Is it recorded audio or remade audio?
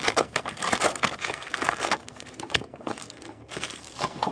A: remade